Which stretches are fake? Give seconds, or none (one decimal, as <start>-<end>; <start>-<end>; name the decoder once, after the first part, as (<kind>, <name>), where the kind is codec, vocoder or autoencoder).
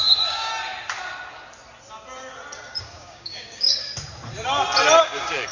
0.0-0.5 (codec, DAC); 2.8-3.9; 5.0-5.5